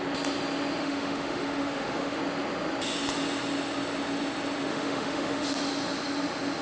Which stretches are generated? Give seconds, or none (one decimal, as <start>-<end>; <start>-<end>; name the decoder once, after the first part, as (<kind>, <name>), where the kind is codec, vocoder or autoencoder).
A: 0.8-2.2 (autoencoder, DAC-VAE); 4.7-5.6